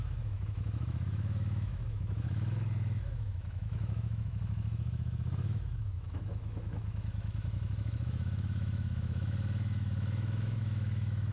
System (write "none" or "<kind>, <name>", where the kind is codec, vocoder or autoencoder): autoencoder, DAC-VAE